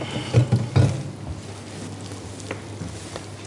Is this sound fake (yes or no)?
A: no